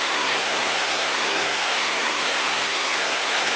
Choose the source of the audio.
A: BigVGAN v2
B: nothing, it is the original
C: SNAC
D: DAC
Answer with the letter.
C